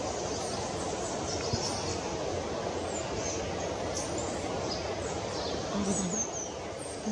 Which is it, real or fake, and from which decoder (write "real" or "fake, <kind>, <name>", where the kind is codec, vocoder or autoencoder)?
real